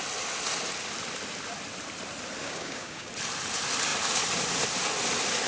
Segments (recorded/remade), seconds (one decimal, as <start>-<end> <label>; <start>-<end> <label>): 0.0-2.4 recorded; 2.4-3.1 remade; 3.1-5.5 recorded